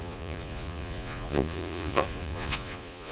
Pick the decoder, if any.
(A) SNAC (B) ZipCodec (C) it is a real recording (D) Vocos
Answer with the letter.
D